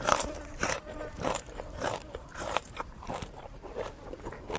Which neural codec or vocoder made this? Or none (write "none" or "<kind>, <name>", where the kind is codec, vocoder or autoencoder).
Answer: vocoder, BigVGAN v2